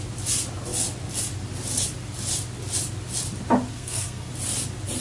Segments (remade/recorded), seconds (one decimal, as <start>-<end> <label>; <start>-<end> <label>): 0.0-3.7 recorded; 3.7-4.3 remade; 4.3-5.0 recorded